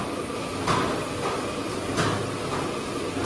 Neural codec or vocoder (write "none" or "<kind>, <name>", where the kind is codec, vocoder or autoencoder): none